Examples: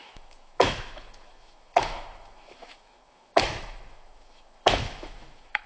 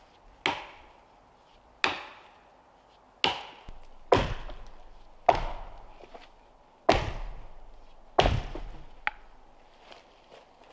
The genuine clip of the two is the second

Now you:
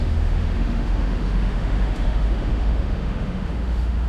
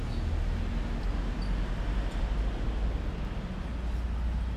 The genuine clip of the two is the second